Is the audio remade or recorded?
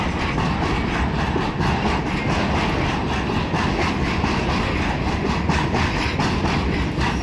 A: recorded